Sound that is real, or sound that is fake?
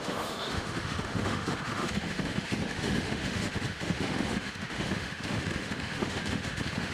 fake